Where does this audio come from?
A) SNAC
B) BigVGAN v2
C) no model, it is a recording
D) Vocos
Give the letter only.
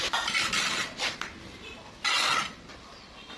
C